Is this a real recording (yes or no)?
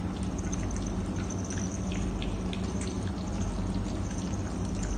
yes